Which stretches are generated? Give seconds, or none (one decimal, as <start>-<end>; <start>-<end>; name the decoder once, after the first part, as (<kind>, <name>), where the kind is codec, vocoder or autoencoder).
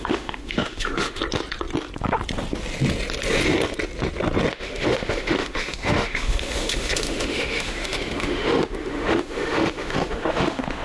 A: 0.0-1.2 (autoencoder, DAC-VAE); 4.5-10.8